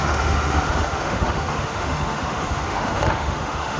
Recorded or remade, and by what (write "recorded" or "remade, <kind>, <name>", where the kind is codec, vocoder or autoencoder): remade, autoencoder, DAC-VAE